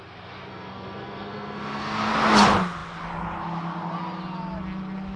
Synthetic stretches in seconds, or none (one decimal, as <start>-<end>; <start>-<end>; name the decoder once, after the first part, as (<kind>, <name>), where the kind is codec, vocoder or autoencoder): 0.5-2.1 (codec, SNAC)